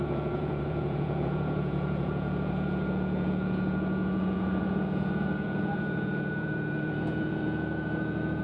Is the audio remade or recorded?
remade